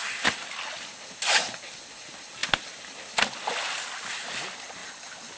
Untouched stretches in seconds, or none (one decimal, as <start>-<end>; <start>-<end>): 0.0-5.4